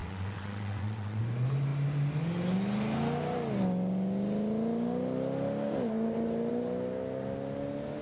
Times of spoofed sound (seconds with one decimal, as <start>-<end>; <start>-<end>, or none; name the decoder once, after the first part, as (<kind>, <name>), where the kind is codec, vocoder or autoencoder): 0.0-1.2 (vocoder, WaveNeXt)

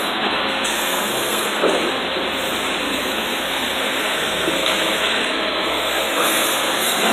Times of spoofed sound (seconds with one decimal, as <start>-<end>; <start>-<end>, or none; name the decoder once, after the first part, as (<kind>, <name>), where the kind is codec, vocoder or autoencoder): 0.0-2.0 (codec, SNAC); 2.8-7.1

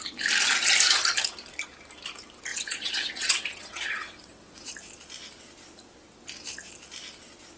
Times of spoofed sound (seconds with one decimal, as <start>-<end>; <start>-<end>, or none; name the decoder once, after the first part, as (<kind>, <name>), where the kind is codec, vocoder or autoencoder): 2.5-4.7 (vocoder, WaveNeXt)

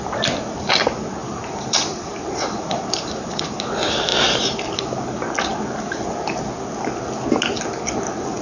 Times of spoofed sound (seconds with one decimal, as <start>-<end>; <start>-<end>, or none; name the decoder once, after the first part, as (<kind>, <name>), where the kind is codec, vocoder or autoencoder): 1.2-3.6 (vocoder, BigVGAN v2)

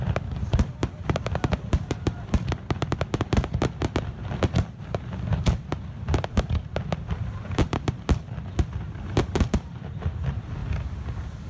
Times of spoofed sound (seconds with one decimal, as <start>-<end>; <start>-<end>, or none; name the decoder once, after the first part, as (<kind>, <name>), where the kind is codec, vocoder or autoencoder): 0.0-10.6 (vocoder, BigVGAN v2)

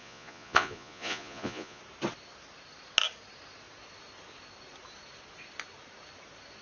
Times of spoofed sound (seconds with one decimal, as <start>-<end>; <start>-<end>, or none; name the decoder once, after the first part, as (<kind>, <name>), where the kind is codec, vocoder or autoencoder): 0.0-1.8 (vocoder, Vocos)

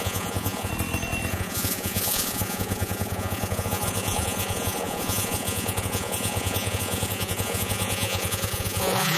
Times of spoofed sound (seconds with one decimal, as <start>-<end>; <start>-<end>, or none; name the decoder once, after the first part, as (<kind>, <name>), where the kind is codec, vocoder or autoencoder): 0.0-0.7 (vocoder, Vocos); 1.3-9.2